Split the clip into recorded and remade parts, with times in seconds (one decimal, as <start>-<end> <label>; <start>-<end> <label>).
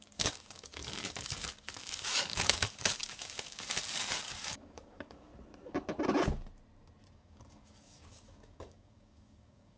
0.0-5.3 remade; 5.3-7.1 recorded; 7.1-9.8 remade